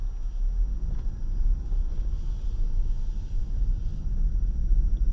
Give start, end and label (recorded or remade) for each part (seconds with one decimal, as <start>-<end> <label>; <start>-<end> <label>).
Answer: 0.0-0.8 recorded; 0.8-1.9 remade; 1.9-3.4 recorded; 3.4-4.6 remade; 4.6-5.1 recorded